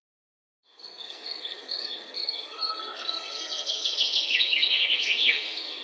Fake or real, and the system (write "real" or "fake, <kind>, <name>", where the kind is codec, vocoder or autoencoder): fake, codec, SNAC